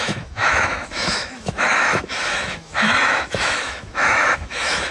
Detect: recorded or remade remade